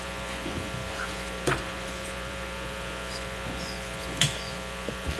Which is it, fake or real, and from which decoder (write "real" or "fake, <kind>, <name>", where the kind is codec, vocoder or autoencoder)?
fake, vocoder, Vocos